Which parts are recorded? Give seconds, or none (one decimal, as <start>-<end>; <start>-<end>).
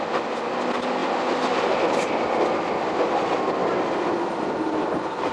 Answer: 0.0-5.3